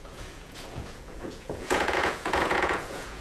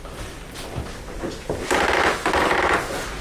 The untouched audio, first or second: second